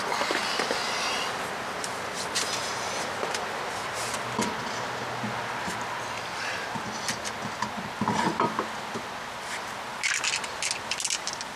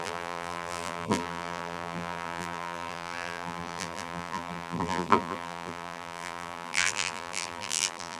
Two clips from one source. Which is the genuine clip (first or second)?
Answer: first